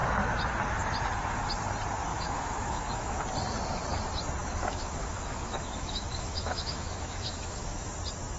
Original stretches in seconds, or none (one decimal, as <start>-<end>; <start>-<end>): 0.0-2.1; 3.2-4.4; 7.9-8.4